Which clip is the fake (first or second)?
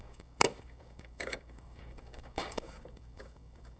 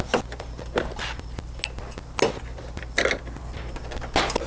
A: first